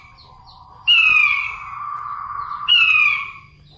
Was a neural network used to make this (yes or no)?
no